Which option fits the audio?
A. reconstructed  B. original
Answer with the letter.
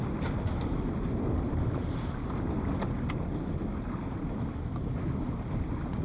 B